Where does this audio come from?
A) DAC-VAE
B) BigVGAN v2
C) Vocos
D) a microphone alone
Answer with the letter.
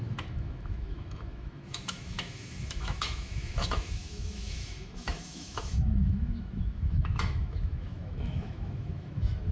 A